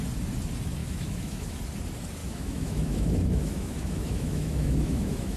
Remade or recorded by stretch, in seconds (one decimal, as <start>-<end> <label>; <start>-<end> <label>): 0.0-0.8 recorded; 0.8-1.6 remade; 1.6-2.2 recorded; 2.2-5.4 remade